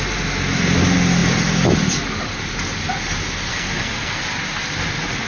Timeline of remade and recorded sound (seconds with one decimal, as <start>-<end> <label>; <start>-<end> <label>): 0.0-3.5 recorded; 3.5-4.2 remade; 4.2-5.3 recorded